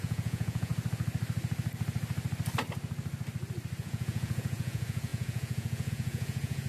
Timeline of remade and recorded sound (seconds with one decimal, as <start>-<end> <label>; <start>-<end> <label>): 0.0-0.7 remade; 0.7-3.8 recorded; 3.8-6.7 remade